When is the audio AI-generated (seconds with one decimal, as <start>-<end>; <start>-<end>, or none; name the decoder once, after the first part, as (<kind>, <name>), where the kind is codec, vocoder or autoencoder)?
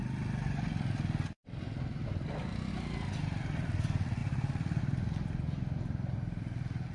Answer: none